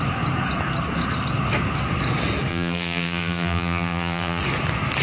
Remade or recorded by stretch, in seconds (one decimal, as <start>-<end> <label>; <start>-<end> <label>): 0.0-2.5 recorded; 2.5-4.4 remade; 4.4-5.0 recorded